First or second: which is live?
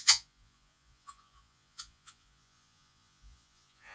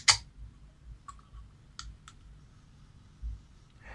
second